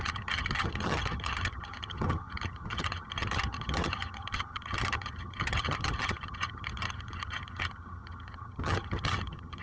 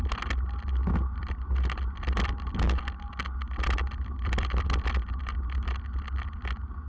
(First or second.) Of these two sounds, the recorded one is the second